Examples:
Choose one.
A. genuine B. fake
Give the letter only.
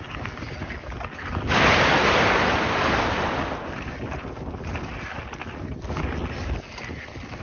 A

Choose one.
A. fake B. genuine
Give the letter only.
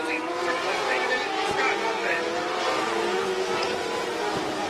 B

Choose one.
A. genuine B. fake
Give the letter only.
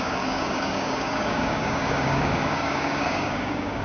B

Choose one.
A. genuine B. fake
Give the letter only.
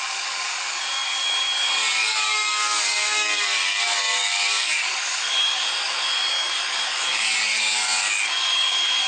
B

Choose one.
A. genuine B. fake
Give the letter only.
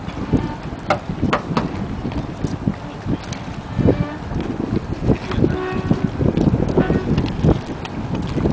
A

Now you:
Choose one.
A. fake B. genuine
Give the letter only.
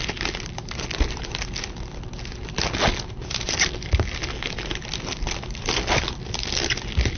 B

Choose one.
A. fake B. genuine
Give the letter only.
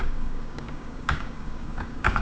A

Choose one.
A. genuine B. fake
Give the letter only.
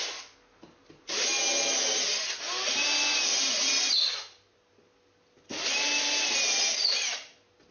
A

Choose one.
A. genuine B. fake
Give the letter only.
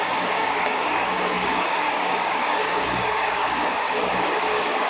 B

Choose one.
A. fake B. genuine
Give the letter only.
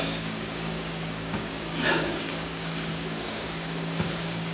A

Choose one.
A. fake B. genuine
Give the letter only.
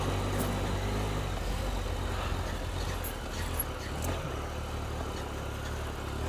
B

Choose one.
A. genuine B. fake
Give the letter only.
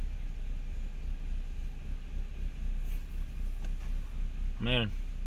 A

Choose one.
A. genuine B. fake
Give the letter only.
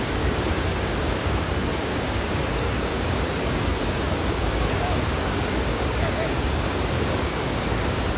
B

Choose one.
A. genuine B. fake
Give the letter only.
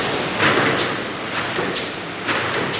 A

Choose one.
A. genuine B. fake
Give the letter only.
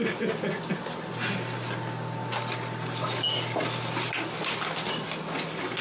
A